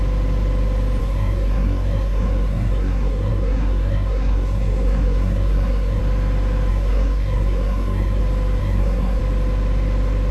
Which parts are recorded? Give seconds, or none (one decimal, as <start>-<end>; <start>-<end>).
0.0-1.0; 6.0-6.7; 8.2-8.6; 9.2-10.3